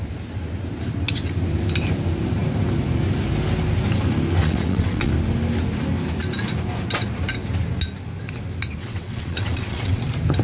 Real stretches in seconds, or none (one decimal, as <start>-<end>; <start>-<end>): 0.0-4.4; 5.1-8.8; 10.0-10.4